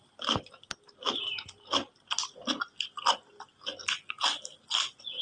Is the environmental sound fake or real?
real